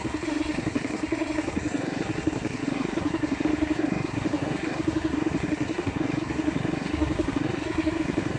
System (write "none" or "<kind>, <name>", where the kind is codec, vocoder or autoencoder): codec, SNAC